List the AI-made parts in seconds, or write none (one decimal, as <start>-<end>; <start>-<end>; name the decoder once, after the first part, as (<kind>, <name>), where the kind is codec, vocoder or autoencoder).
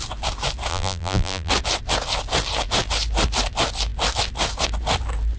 0.7-1.5 (vocoder, BigVGAN v2)